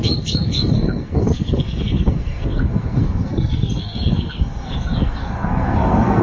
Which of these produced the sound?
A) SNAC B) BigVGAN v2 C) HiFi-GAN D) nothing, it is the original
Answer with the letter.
A